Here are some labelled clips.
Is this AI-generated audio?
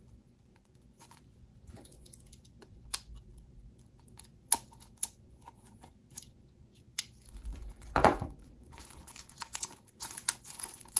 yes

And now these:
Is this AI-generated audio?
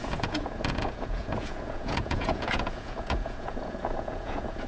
yes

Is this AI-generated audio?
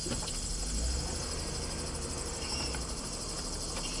no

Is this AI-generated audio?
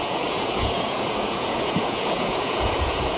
yes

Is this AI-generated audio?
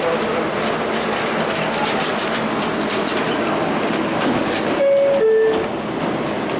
no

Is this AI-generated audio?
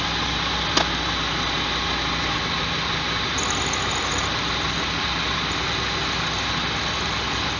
no